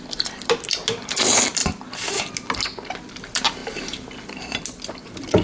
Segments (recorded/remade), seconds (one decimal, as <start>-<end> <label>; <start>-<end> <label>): 0.0-5.4 recorded